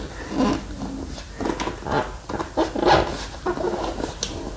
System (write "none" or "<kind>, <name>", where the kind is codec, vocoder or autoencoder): none